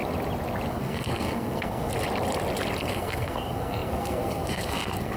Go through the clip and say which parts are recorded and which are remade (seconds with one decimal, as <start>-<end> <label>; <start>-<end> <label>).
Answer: 0.0-0.7 recorded; 0.7-1.9 remade; 1.9-2.8 recorded; 2.8-5.2 remade